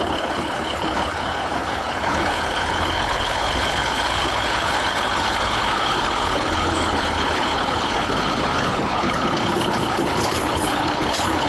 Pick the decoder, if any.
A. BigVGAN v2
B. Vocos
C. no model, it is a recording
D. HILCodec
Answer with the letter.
D